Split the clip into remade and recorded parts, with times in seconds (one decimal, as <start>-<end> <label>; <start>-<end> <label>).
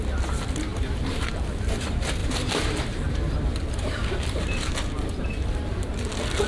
0.0-0.7 recorded; 0.7-1.2 remade; 1.2-2.2 recorded; 2.2-6.1 remade; 6.1-6.5 recorded